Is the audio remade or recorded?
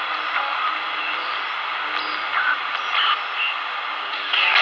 recorded